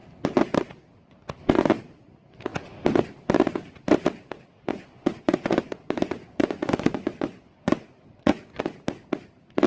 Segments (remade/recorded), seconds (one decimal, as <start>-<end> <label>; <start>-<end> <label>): 0.0-4.7 recorded; 4.7-8.6 remade; 8.6-9.7 recorded